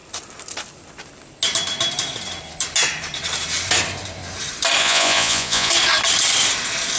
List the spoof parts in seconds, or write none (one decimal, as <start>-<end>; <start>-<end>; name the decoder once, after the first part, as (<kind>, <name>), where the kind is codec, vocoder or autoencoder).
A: 4.8-5.7 (vocoder, Vocos)